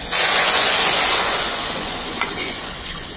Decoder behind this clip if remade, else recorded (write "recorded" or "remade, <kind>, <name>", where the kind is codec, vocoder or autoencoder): remade, vocoder, Vocos